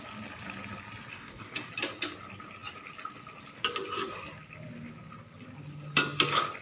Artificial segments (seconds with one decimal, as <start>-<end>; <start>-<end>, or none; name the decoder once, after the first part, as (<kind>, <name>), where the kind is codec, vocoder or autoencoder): 1.1-1.7 (codec, DAC)